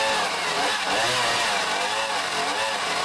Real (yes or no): yes